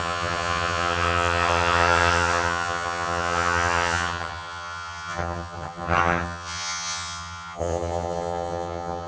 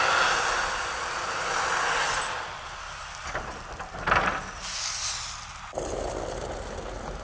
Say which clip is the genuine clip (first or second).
second